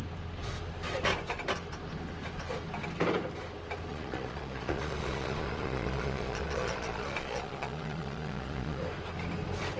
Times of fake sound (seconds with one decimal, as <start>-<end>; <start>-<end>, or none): 3.9-8.8